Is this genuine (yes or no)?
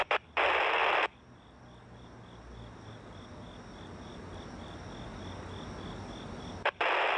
yes